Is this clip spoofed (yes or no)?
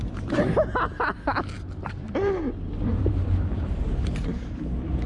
yes